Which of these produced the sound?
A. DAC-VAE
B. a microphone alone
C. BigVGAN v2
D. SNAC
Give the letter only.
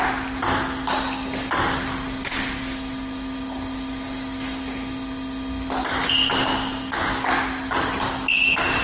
B